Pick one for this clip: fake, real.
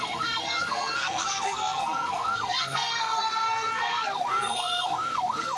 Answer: fake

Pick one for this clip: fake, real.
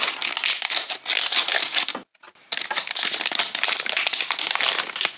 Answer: real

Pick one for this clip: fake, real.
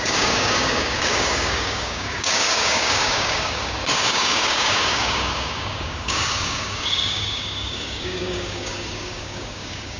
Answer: fake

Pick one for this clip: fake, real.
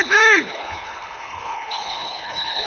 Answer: fake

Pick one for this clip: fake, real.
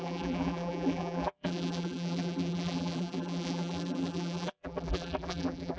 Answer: fake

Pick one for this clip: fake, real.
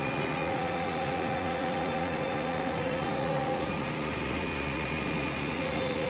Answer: fake